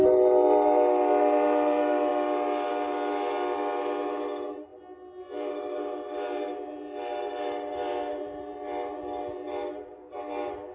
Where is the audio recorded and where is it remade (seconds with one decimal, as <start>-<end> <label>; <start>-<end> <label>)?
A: 0.0-10.7 recorded